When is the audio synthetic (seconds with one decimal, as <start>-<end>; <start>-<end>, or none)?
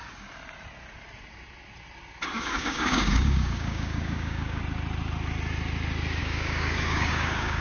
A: 2.3-4.6; 6.2-7.6